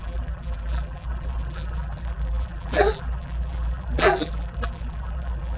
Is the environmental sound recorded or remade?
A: remade